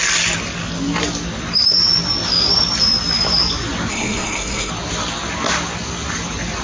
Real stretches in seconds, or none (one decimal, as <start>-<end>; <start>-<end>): 0.0-3.9; 4.7-6.6